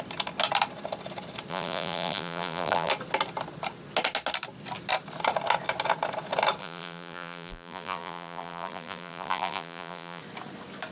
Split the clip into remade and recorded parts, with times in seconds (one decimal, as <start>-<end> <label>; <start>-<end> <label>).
0.0-1.5 recorded; 1.5-2.9 remade; 2.9-6.6 recorded; 6.6-10.2 remade; 10.2-10.9 recorded